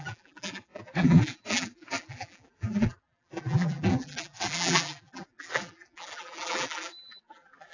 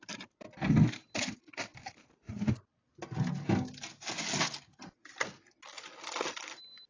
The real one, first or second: second